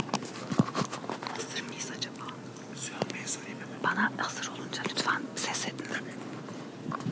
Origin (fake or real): real